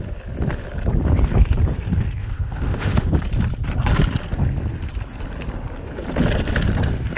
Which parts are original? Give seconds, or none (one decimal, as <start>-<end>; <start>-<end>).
0.0-2.2; 3.1-7.2